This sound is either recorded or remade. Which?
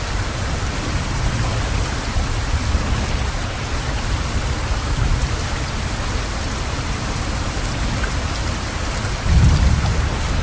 recorded